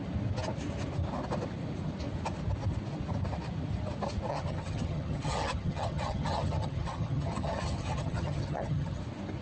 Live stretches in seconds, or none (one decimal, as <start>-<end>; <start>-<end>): 0.0-4.3; 9.0-9.4